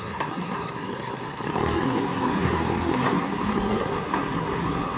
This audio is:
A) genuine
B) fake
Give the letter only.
B